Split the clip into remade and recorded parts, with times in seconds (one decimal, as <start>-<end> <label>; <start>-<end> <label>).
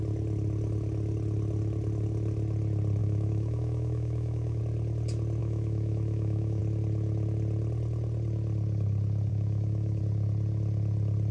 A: 0.0-3.0 recorded; 3.0-4.6 remade; 4.6-5.4 recorded; 5.4-6.6 remade; 6.6-9.3 recorded; 9.3-10.0 remade; 10.0-11.3 recorded